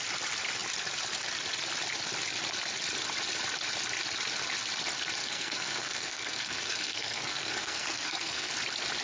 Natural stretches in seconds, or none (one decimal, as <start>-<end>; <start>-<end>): 0.0-5.2; 8.5-9.0